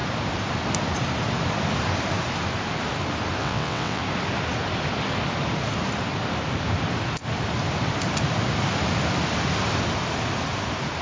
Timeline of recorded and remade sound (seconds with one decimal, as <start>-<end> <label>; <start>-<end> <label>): 0.0-3.4 recorded; 3.4-4.0 remade; 4.0-11.0 recorded